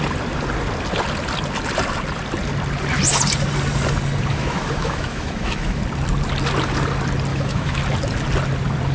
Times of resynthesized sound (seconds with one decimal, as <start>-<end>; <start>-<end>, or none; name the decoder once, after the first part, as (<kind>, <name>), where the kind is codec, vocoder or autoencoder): 4.3-5.8 (autoencoder, DAC-VAE); 7.3-7.8